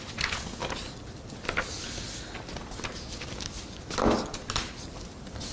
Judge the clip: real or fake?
real